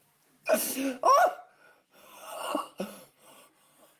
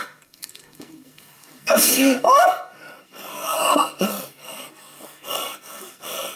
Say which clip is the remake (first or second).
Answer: second